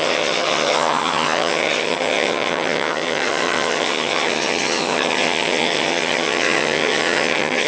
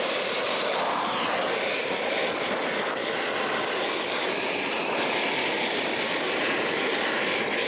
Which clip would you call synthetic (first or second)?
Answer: first